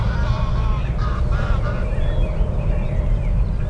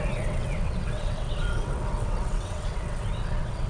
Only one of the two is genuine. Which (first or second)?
first